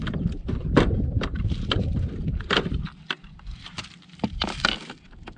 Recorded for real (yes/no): no